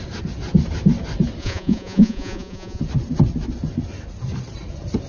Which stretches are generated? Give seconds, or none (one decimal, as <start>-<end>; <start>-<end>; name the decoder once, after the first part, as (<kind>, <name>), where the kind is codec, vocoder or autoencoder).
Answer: 1.4-2.8 (vocoder, Vocos)